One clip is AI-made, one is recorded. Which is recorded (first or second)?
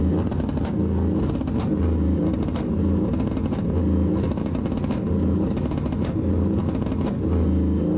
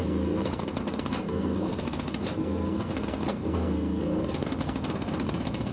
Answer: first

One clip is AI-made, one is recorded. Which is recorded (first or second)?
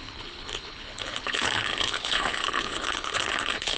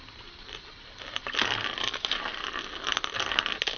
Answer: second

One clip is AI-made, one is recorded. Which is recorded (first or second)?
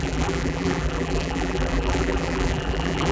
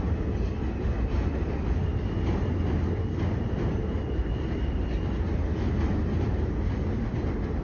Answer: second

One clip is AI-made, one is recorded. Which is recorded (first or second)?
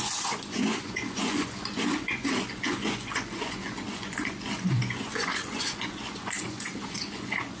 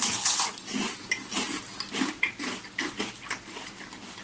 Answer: second